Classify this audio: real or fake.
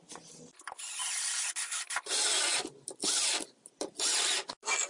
real